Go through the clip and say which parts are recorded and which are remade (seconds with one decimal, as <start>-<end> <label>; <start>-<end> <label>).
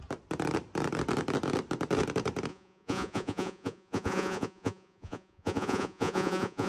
0.0-2.5 recorded; 2.5-6.7 remade